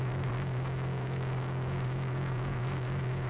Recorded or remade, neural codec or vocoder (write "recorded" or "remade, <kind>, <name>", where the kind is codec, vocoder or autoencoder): remade, codec, DAC